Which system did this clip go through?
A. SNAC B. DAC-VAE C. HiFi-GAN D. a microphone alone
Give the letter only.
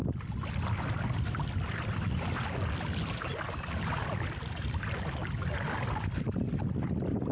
D